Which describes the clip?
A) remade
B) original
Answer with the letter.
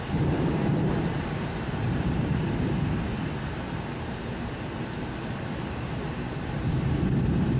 A